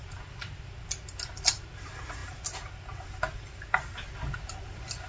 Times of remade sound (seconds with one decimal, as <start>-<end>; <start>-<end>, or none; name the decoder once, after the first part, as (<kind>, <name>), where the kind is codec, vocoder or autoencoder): none